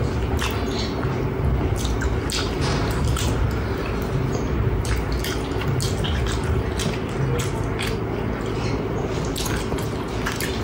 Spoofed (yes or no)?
no